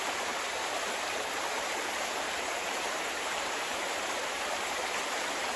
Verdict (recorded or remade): remade